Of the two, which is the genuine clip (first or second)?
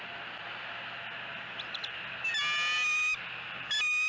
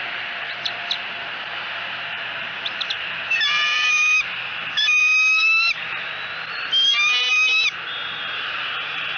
first